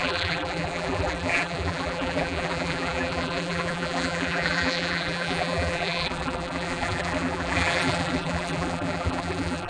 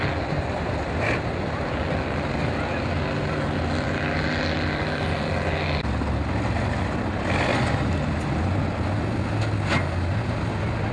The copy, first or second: first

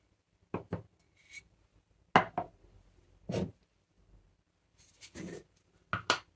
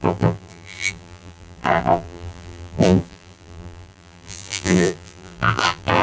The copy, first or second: second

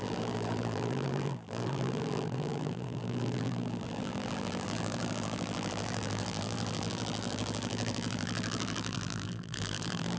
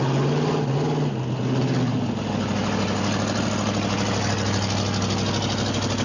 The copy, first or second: first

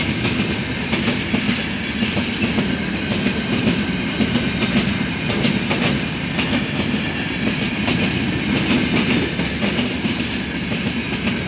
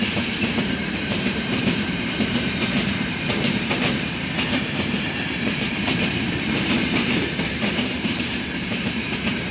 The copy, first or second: second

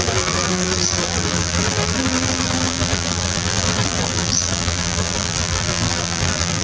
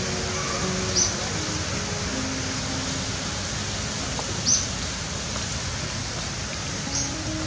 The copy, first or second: first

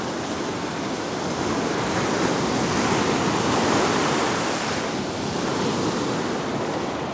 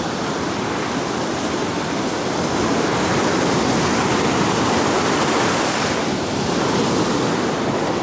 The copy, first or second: second